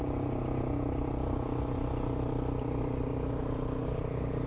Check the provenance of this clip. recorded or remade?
recorded